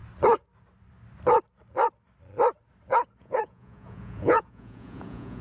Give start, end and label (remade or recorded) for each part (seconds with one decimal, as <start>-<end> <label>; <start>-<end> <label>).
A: 0.0-3.2 recorded; 3.2-5.4 remade